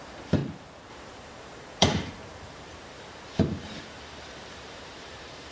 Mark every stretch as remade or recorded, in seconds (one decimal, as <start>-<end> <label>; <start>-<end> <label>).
0.0-0.4 remade; 0.4-0.9 recorded; 0.9-5.5 remade